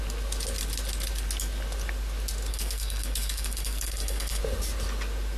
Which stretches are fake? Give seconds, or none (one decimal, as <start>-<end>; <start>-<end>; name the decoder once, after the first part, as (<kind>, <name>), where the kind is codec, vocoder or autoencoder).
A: 2.5-4.4 (codec, SNAC)